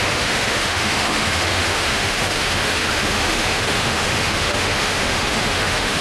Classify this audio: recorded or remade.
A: remade